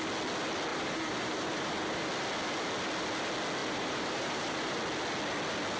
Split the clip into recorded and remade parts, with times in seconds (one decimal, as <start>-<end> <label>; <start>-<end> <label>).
0.0-0.7 recorded; 0.7-2.1 remade; 2.1-3.6 recorded; 3.6-4.8 remade; 4.8-5.8 recorded